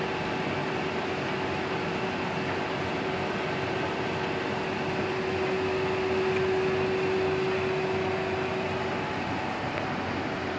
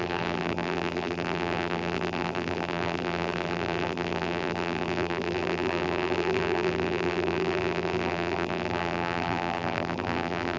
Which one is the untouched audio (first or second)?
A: first